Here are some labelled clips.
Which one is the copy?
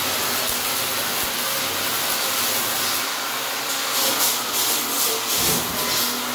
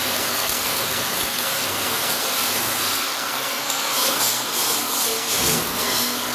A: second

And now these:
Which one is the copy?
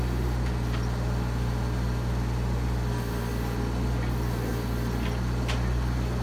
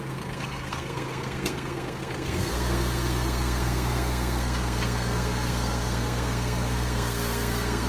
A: second